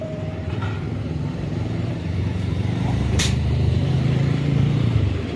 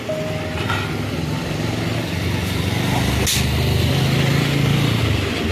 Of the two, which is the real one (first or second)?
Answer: second